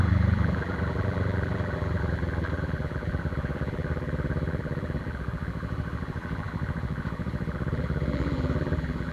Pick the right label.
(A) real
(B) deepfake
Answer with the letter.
B